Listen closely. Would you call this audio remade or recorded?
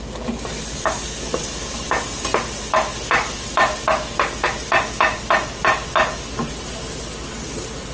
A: recorded